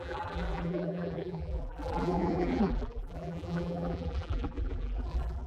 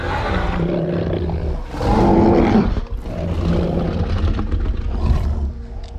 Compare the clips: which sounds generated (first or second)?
first